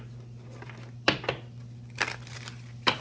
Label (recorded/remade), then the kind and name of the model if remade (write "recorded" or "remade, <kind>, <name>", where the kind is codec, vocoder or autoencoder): recorded